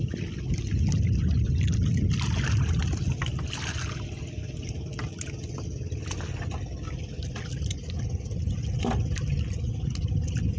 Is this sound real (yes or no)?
yes